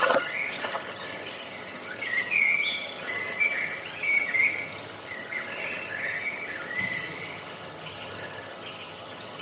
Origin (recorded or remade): remade